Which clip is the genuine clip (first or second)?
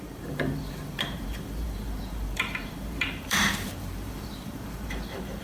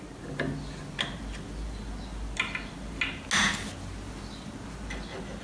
second